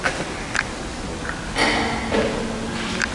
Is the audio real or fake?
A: real